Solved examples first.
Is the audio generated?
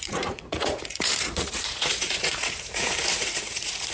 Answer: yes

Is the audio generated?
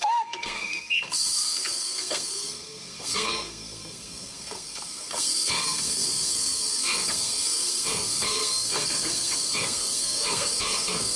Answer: yes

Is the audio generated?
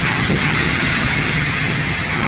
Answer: yes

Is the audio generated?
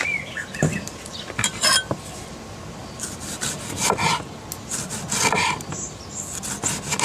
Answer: no